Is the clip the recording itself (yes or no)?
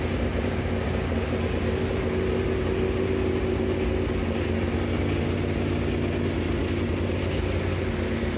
yes